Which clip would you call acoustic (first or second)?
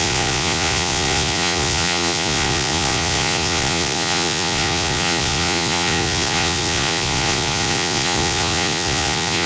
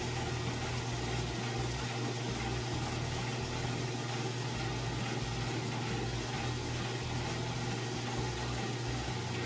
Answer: second